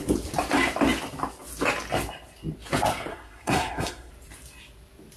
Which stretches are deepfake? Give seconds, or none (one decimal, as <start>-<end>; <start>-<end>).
3.1-4.1